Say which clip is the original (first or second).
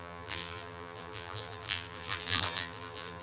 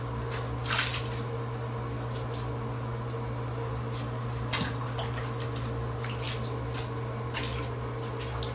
second